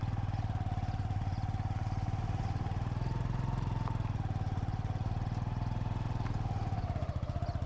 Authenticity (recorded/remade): recorded